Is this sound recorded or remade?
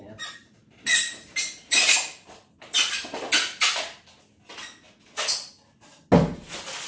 recorded